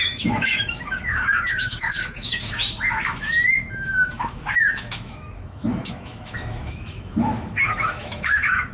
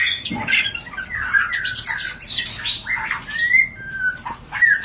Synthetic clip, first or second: first